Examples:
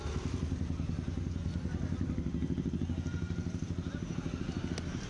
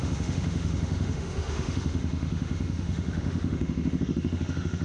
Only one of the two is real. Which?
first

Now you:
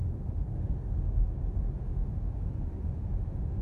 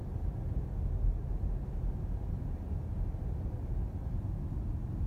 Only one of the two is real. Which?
second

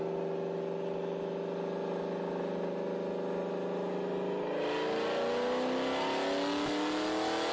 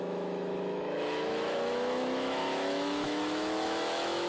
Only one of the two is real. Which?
first